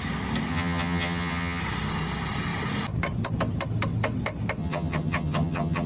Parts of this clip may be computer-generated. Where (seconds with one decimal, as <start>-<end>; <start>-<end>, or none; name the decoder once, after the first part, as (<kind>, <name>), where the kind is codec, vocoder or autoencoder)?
0.5-1.6 (vocoder, HiFi-GAN); 4.6-5.9